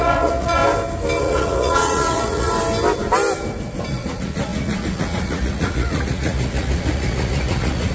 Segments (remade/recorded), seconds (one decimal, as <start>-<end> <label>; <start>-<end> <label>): 0.0-0.6 remade; 0.6-1.2 recorded; 1.2-2.5 remade; 2.5-3.9 recorded; 3.9-7.9 remade